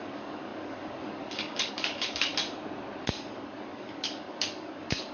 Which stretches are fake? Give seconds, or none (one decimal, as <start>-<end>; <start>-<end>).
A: 0.0-2.3; 3.0-5.1